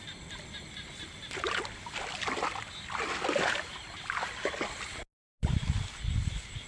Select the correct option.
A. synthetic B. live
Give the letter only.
B